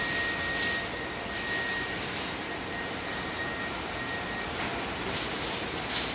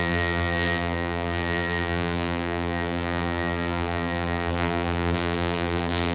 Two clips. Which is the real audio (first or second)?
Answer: first